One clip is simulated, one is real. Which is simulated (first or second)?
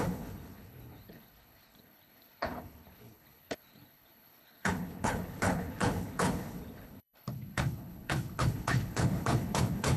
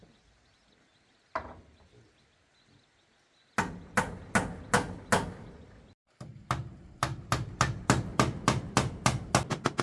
first